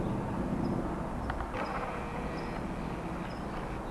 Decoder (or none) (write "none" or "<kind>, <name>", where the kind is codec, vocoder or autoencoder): none